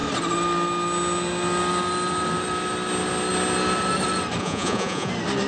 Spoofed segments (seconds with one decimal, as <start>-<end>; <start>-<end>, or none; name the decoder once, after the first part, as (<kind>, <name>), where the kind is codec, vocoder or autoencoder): 4.4-5.1 (vocoder, Vocos)